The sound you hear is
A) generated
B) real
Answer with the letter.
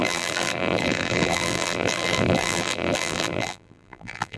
A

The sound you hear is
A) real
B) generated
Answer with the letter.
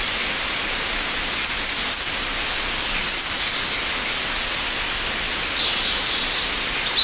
A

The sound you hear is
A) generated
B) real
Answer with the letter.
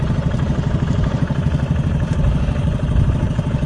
A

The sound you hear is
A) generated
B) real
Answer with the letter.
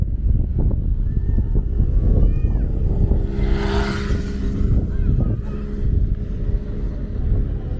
B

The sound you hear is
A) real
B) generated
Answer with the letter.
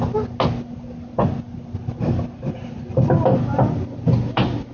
A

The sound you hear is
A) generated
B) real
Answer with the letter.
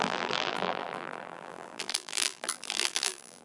A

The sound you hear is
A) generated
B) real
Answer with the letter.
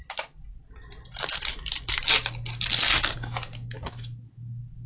B